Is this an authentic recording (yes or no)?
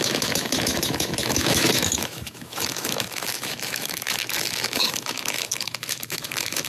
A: no